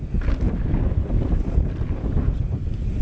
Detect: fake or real real